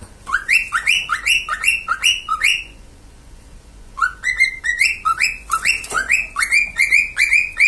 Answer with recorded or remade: remade